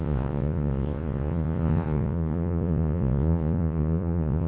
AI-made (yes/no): yes